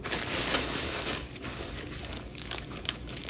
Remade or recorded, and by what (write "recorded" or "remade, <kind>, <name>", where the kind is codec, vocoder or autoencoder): remade, codec, DAC